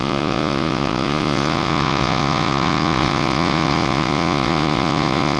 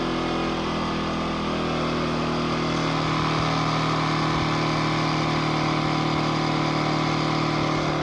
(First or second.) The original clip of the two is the second